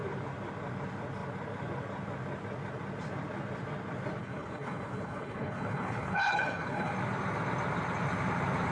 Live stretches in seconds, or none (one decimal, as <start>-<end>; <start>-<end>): 0.0-4.2; 6.9-8.7